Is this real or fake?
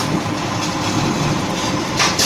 real